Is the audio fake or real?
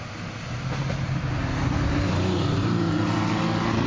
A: real